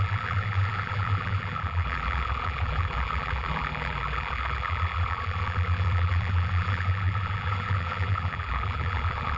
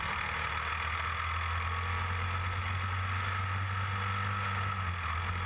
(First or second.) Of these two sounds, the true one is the second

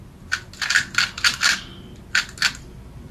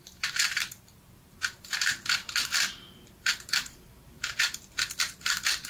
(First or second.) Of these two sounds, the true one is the first